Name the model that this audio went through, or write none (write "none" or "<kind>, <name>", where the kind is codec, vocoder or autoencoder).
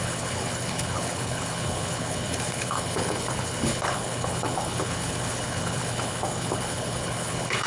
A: codec, HILCodec